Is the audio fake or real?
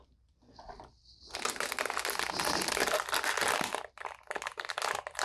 real